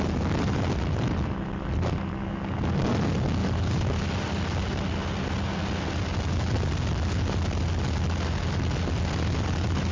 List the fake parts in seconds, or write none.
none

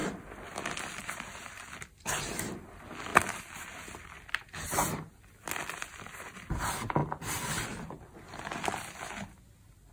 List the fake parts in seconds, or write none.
none